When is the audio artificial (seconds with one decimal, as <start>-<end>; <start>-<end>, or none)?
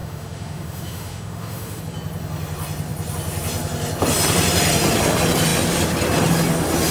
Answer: 0.0-1.8